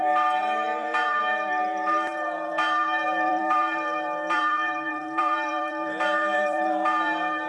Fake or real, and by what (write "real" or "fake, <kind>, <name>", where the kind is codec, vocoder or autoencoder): fake, vocoder, BigVGAN v2